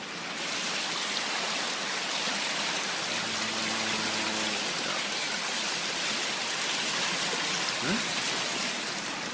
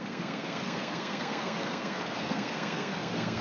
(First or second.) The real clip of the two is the first